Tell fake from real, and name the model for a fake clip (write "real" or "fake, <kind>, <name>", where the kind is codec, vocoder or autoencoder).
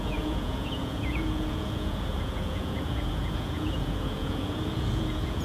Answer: fake, vocoder, Vocos